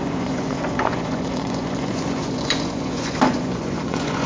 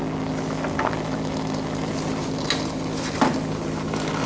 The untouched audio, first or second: second